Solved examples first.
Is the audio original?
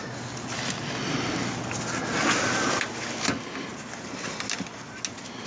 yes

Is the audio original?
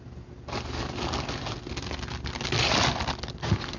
yes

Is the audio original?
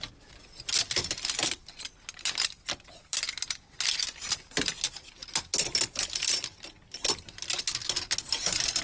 yes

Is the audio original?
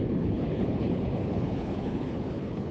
no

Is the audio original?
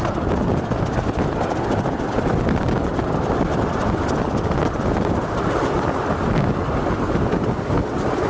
yes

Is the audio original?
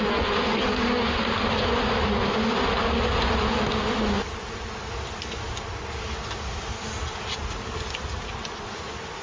yes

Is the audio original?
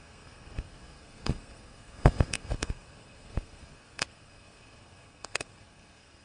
no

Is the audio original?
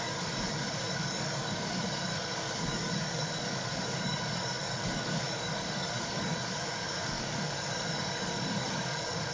no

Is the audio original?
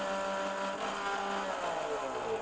yes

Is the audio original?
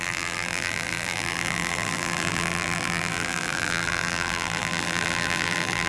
no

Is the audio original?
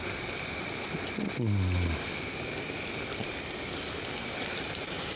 yes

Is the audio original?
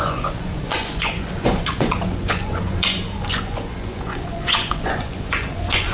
no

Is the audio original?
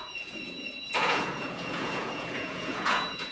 no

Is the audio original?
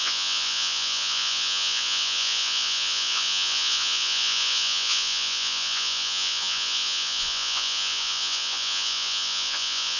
no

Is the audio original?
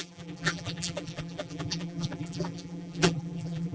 no